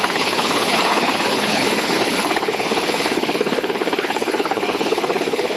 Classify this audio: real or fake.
fake